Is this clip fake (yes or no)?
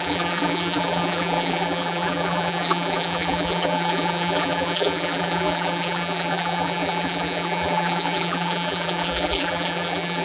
yes